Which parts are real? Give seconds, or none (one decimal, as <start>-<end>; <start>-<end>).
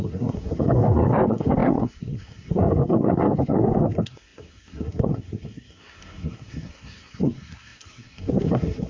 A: none